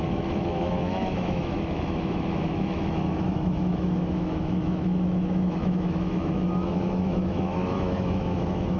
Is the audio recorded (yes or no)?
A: no